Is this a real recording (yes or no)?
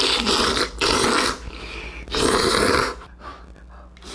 yes